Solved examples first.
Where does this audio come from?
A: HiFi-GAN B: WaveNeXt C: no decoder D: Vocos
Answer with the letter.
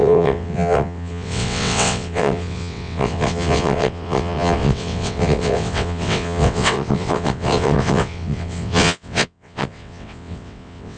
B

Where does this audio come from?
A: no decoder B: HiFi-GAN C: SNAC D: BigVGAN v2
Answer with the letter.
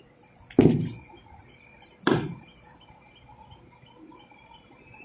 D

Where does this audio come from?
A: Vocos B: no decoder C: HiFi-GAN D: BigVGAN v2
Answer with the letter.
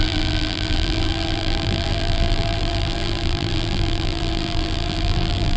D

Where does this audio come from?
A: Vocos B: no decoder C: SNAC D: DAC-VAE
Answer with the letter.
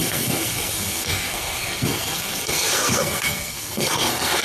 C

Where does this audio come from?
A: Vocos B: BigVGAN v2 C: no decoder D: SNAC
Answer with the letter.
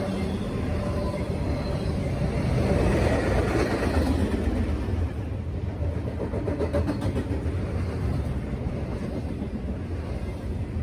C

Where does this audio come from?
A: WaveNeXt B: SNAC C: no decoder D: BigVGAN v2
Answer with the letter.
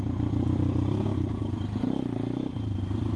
D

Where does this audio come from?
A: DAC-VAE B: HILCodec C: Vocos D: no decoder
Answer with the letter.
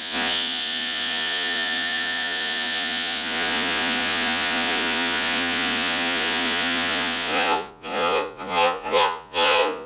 C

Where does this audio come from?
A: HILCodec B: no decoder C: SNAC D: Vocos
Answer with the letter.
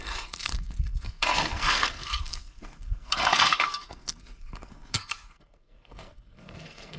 C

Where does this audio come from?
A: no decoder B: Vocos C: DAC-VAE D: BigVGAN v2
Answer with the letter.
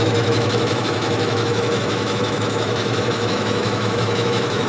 C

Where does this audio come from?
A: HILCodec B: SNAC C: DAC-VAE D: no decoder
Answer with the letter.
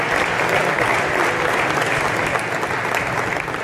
D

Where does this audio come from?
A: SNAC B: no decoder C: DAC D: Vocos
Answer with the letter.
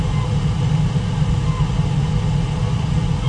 B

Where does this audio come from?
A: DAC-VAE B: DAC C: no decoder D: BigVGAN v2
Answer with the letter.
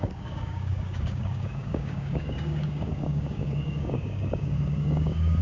B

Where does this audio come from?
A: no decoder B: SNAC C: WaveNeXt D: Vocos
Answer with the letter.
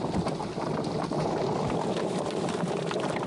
A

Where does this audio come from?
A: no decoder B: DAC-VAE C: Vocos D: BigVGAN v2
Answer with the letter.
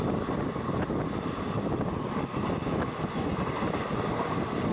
A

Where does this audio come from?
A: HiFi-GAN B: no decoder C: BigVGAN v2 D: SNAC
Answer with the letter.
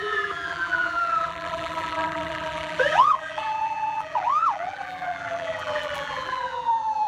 C